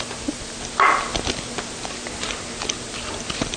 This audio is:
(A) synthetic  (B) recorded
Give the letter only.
B